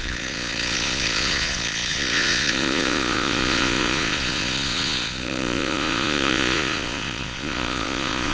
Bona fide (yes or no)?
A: no